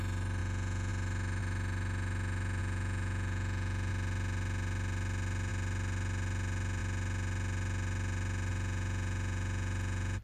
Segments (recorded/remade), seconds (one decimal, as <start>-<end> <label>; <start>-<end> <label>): 0.0-0.4 recorded; 0.4-0.9 remade; 0.9-2.6 recorded; 2.6-3.9 remade; 3.9-8.5 recorded; 8.5-10.2 remade